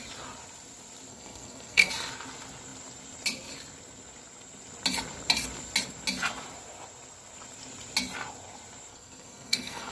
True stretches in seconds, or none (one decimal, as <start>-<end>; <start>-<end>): 0.0-1.1; 1.9-8.9